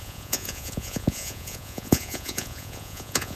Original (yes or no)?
no